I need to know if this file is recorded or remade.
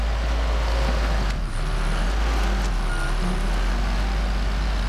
recorded